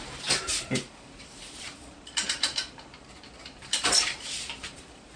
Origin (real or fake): fake